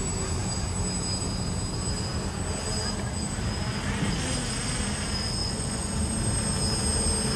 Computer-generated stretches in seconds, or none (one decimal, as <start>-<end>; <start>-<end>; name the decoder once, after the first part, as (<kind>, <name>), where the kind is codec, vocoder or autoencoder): 5.4-5.9 (vocoder, Vocos)